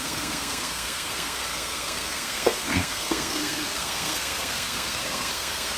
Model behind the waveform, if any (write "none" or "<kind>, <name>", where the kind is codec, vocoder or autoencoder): codec, SNAC